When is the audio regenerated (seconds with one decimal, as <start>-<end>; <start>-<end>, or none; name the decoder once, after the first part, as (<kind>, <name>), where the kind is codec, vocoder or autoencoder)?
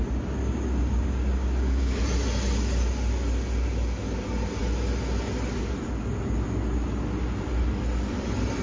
0.4-2.0 (codec, DAC)